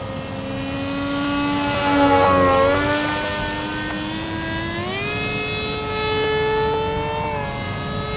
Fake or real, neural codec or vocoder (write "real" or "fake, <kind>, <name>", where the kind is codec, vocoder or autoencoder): real